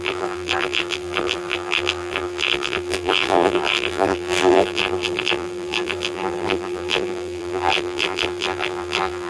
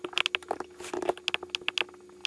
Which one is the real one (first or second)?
second